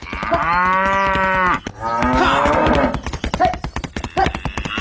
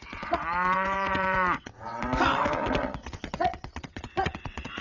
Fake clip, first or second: second